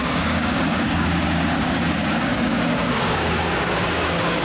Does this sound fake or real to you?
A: fake